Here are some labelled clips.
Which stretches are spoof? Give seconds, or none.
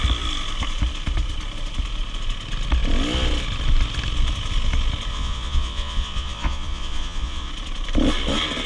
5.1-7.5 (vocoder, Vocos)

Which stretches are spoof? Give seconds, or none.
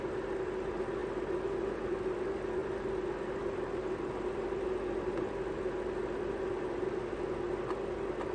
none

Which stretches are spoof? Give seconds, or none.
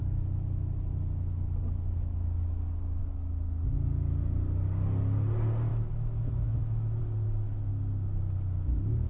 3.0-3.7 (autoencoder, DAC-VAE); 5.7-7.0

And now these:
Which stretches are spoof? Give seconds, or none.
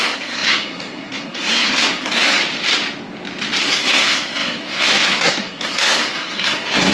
0.0-2.4 (codec, SNAC); 3.6-6.9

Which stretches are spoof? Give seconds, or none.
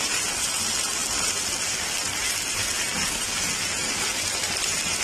none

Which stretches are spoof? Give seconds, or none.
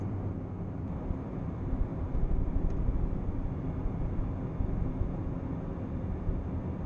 1.9-2.9 (vocoder, BigVGAN v2)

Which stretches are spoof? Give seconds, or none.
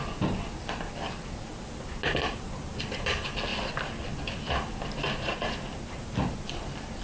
none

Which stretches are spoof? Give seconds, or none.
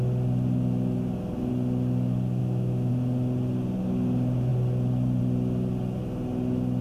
2.4-2.9 (autoencoder, DAC-VAE)